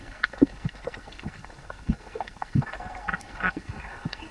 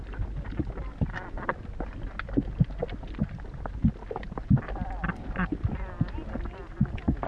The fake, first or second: first